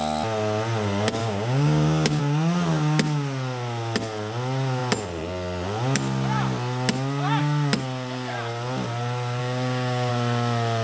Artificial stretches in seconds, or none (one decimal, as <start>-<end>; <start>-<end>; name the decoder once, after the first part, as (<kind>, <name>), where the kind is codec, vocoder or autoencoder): 1.2-2.2 (codec, DAC); 9.4-10.1